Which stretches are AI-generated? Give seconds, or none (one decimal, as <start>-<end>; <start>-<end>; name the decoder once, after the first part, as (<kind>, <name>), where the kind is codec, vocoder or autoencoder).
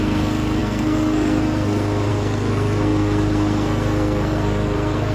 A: 0.0-5.1 (codec, SNAC)